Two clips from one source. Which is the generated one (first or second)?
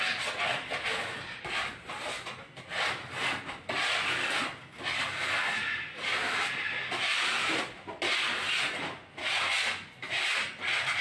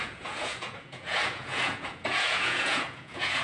second